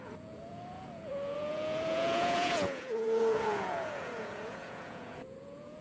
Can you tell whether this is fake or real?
fake